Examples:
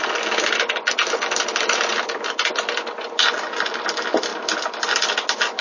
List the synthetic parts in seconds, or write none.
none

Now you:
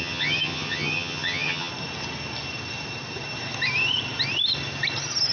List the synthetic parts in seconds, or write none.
0.0-1.7 (vocoder, HiFi-GAN)

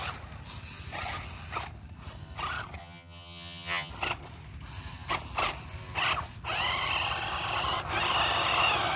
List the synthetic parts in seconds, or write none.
2.8-3.9 (vocoder, HiFi-GAN)

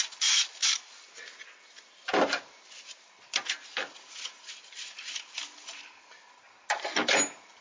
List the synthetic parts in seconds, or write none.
none

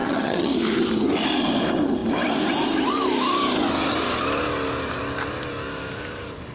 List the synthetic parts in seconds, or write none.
0.0-0.5 (vocoder, HiFi-GAN)

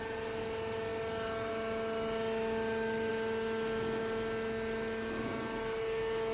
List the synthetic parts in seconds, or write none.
none

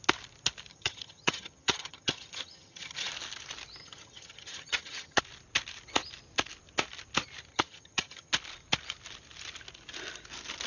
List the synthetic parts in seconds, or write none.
0.7-3.1 (vocoder, HiFi-GAN); 3.8-5.2; 7.5-8.3

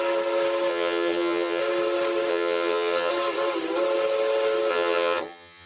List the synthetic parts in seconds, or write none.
0.7-1.6 (vocoder, HiFi-GAN); 2.3-3.1; 4.7-5.7